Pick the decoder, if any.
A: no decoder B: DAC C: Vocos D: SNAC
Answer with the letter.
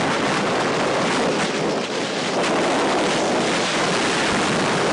A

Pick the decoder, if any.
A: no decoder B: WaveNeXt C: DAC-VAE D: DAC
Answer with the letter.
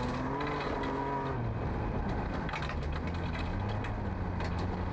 A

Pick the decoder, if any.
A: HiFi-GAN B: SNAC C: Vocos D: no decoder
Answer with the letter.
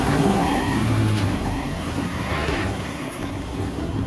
B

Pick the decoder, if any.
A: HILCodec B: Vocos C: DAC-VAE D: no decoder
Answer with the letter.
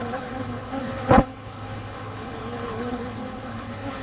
A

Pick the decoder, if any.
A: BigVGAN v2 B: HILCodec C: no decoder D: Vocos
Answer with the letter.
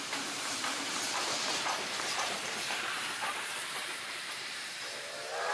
A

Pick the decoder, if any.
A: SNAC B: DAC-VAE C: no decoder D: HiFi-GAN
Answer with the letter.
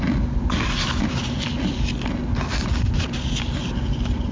C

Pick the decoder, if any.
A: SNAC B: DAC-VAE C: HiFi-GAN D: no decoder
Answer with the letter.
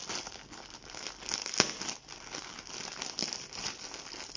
D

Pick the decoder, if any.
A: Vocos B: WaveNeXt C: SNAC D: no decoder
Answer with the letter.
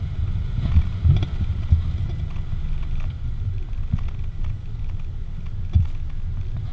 D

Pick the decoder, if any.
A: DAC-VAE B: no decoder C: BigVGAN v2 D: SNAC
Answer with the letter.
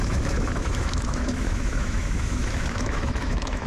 A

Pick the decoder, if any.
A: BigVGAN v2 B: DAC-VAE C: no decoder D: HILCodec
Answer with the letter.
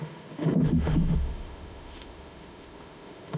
B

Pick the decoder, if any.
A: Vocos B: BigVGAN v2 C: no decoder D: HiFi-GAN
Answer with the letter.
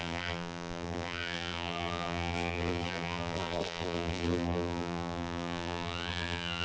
B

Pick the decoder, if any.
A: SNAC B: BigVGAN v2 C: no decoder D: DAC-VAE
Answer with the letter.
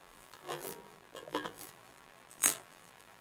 B